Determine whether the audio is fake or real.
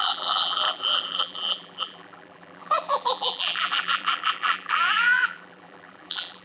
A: fake